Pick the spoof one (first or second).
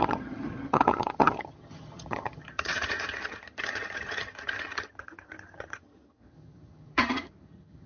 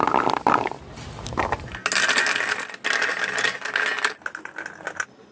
first